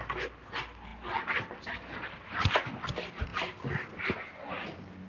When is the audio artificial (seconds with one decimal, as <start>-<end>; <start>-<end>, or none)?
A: none